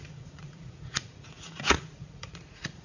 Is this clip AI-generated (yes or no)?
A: yes